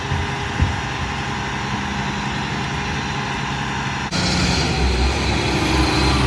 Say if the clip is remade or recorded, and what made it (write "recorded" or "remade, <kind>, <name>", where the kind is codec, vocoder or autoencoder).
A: recorded